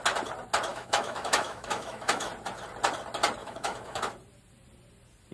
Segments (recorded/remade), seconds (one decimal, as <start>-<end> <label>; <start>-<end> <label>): 0.0-0.7 recorded; 0.7-2.3 remade; 2.3-3.4 recorded; 3.4-4.0 remade; 4.0-5.3 recorded